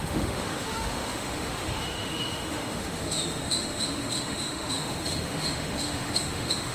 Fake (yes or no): yes